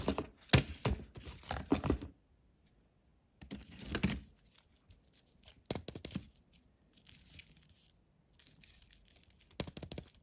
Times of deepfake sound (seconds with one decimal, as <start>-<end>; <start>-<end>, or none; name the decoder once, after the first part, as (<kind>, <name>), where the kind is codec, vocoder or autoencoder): none